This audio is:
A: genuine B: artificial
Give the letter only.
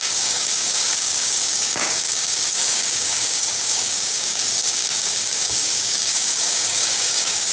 B